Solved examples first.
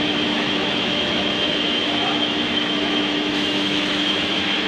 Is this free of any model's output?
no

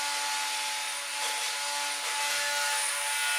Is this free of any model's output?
yes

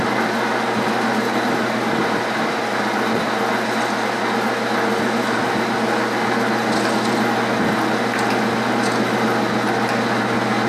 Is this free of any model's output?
yes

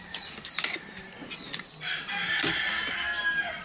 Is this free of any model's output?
yes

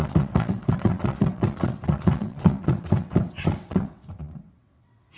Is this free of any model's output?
no